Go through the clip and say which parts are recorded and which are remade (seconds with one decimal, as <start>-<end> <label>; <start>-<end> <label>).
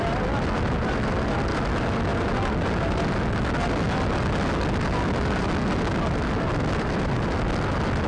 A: 0.0-8.1 recorded